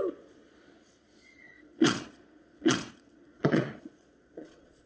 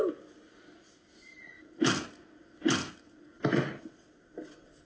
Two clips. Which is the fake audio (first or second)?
first